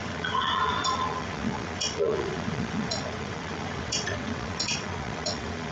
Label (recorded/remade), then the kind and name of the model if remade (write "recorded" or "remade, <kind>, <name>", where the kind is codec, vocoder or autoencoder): remade, vocoder, WaveNeXt